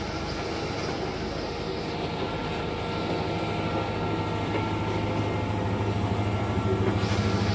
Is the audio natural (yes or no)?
yes